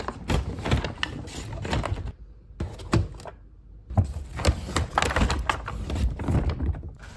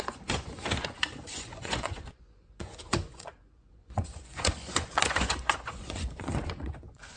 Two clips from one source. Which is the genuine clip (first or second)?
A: first